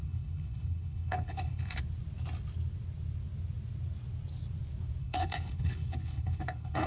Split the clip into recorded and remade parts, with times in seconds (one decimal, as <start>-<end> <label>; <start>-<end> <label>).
0.0-1.8 remade; 1.8-5.0 recorded; 5.0-6.9 remade